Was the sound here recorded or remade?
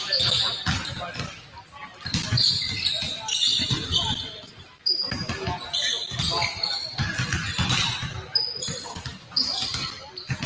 recorded